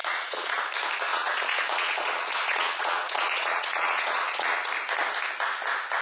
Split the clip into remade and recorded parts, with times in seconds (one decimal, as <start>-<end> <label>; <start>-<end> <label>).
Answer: 0.0-0.6 remade; 0.6-1.1 recorded; 1.1-4.7 remade; 4.7-6.0 recorded